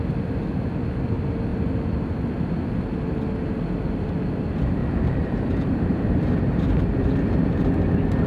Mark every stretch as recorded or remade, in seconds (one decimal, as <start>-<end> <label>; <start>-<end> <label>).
0.0-4.8 recorded; 4.8-7.6 remade; 7.6-8.3 recorded